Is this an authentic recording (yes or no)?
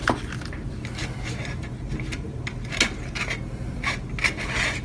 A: yes